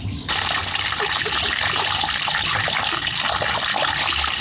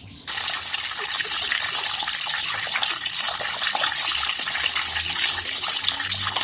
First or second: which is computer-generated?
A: first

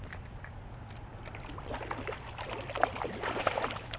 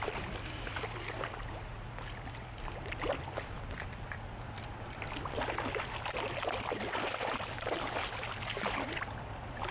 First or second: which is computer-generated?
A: first